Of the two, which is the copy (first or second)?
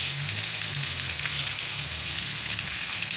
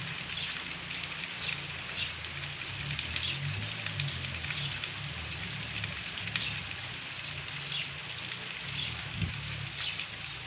first